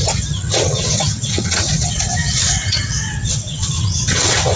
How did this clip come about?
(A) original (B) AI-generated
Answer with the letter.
B